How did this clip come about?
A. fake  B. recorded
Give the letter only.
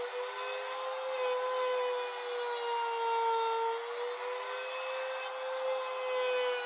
B